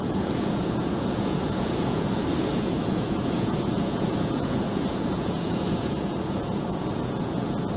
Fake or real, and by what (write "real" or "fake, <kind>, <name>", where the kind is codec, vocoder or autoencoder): fake, vocoder, Vocos